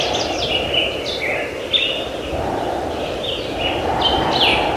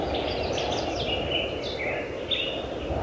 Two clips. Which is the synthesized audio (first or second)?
first